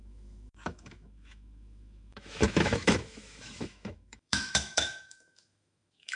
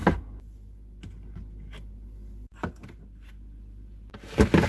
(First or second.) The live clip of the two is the second